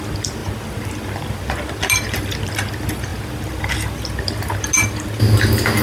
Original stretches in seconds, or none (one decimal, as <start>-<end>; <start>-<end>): 0.0-5.8